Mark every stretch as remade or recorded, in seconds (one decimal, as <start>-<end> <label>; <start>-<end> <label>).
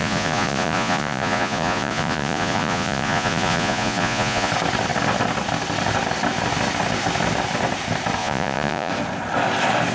0.0-4.5 remade; 4.5-8.2 recorded; 8.2-8.9 remade; 8.9-9.9 recorded